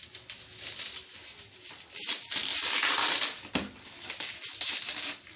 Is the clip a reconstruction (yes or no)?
no